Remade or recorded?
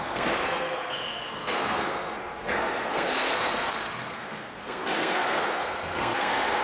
remade